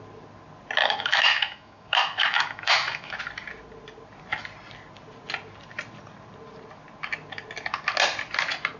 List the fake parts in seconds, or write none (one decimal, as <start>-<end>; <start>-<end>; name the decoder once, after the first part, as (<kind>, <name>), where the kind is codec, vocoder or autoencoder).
0.8-3.2 (autoencoder, DAC-VAE)